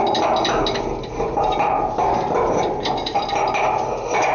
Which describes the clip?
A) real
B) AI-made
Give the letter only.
A